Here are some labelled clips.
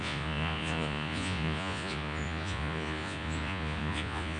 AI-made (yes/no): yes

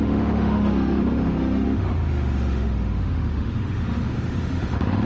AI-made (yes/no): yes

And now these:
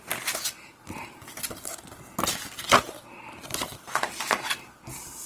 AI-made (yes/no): no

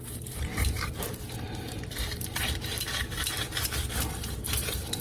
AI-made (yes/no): yes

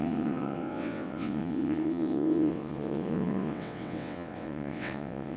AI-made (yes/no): yes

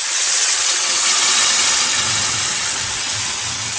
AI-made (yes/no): yes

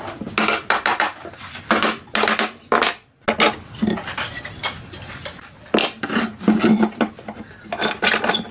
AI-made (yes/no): no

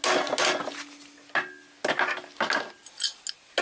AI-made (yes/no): no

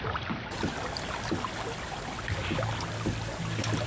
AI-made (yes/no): no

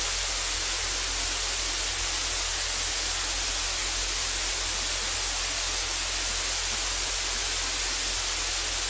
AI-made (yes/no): no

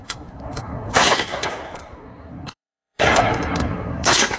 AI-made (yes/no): yes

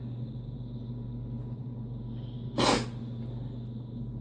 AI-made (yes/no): no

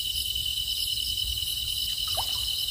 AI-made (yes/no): yes